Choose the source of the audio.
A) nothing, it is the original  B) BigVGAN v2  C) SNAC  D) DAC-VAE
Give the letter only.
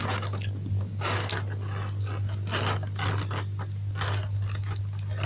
A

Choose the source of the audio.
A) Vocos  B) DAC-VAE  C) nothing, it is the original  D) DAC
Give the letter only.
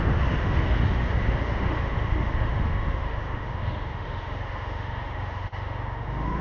B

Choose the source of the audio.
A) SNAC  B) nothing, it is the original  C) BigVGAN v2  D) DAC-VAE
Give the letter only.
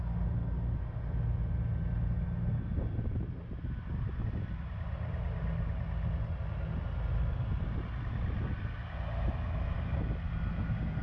B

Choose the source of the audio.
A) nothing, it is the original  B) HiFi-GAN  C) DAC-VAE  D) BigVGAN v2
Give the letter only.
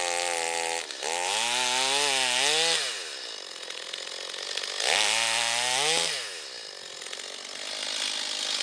A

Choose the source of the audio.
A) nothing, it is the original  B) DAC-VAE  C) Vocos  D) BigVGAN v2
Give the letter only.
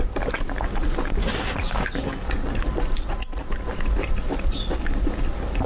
A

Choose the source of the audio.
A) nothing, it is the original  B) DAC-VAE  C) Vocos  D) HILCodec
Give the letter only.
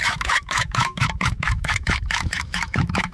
B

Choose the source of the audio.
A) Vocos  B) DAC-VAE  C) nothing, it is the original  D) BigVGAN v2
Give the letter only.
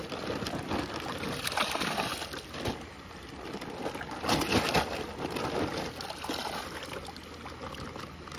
C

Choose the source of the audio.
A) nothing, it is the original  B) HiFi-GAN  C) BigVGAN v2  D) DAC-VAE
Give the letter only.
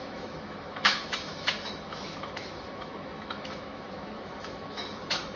D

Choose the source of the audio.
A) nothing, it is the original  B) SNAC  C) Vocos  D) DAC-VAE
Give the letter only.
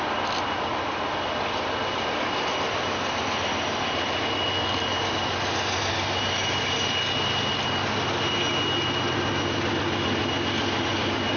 A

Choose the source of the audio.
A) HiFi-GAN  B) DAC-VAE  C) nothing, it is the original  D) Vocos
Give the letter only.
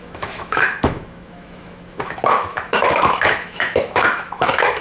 B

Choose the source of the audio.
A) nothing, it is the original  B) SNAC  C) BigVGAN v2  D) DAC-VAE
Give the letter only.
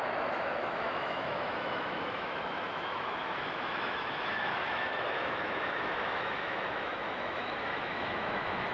D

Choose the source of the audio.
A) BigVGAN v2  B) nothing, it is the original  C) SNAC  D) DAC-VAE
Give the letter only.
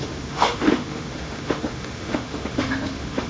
D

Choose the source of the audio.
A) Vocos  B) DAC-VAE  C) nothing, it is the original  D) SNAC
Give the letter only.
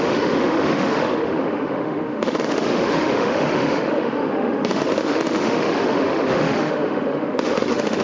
B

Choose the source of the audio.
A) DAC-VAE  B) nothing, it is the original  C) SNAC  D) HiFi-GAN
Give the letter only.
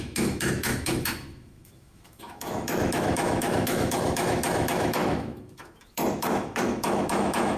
A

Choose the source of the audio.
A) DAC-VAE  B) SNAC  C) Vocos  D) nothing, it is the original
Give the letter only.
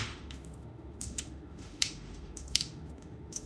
A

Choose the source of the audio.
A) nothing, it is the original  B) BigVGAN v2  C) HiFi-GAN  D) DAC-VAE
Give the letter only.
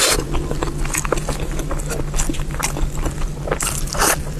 A